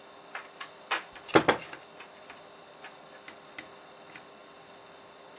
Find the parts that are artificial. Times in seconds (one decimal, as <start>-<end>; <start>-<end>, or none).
none